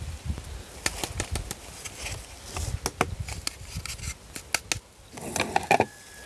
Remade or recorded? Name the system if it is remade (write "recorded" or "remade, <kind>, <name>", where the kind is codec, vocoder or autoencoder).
recorded